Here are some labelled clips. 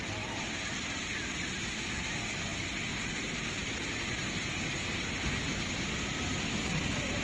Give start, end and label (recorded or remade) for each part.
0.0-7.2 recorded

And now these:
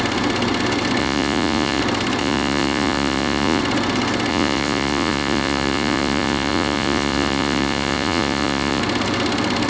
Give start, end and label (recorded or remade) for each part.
0.0-1.0 recorded; 1.0-1.8 remade; 1.8-2.2 recorded; 2.2-3.6 remade; 3.6-4.3 recorded; 4.3-8.8 remade; 8.8-9.7 recorded

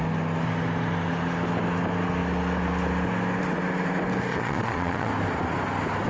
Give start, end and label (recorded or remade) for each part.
0.0-4.3 recorded; 4.3-5.1 remade; 5.1-6.1 recorded

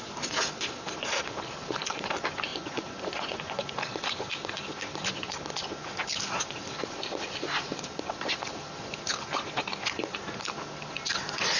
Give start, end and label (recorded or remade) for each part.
0.0-2.5 recorded; 2.5-3.7 remade; 3.7-11.6 recorded

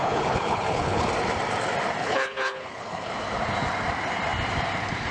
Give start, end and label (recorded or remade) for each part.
0.0-1.1 remade; 1.1-2.0 recorded; 2.0-3.1 remade; 3.1-5.1 recorded

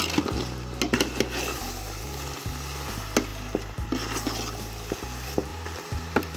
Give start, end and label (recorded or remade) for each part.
0.0-5.5 recorded; 5.5-6.4 remade